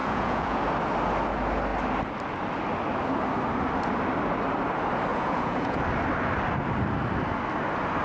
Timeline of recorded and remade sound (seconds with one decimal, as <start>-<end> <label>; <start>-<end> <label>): 0.0-0.6 remade; 0.6-5.1 recorded; 5.1-5.8 remade; 5.8-8.0 recorded